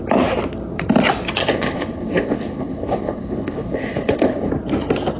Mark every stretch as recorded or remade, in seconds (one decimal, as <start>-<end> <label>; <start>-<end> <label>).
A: 0.0-1.4 recorded; 1.4-4.5 remade; 4.5-5.2 recorded